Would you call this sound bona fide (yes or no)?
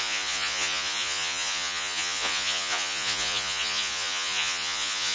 no